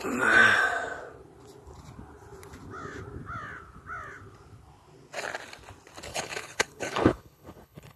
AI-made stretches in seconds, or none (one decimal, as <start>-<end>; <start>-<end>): 6.1-8.0